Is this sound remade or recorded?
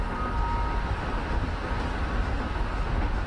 recorded